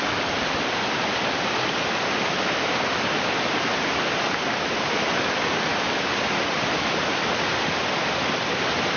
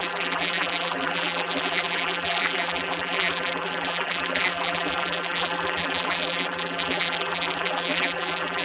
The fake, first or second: second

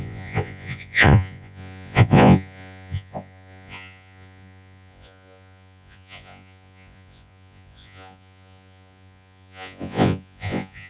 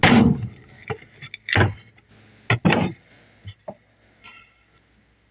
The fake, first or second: first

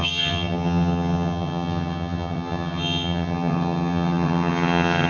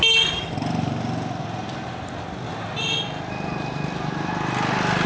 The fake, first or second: first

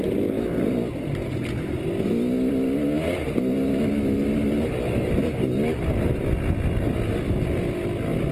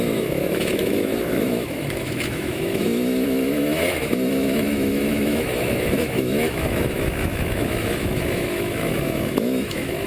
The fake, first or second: second